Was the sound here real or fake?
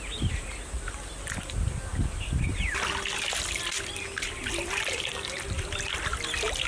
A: real